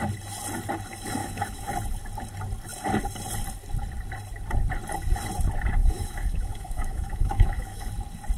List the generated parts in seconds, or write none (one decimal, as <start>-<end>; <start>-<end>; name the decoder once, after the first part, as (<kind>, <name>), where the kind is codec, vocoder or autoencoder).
1.2-1.7 (autoencoder, DAC-VAE); 5.8-7.9